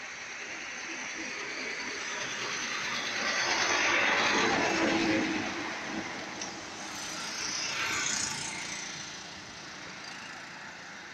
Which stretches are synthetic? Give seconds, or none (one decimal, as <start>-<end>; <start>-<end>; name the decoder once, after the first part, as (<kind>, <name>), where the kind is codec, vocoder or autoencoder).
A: 0.0-2.9 (vocoder, BigVGAN v2); 7.4-8.3